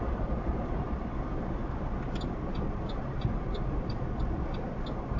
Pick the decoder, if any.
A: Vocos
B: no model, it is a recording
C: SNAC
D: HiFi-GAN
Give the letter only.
B